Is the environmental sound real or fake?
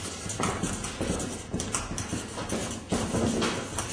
real